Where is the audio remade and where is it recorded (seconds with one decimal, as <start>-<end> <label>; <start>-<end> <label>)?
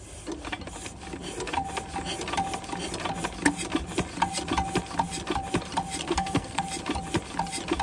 0.0-6.0 recorded; 6.0-6.6 remade; 6.6-7.8 recorded